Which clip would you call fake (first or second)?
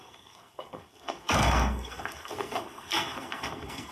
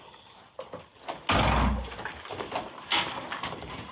first